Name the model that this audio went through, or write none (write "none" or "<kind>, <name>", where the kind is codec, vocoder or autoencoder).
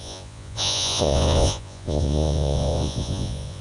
vocoder, Vocos